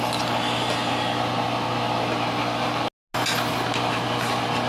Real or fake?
real